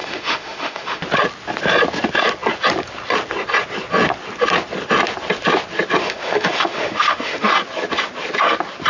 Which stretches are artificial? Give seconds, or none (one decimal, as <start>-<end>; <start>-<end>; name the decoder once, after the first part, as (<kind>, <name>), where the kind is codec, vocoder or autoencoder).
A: 0.0-1.0 (autoencoder, DAC-VAE); 6.0-7.5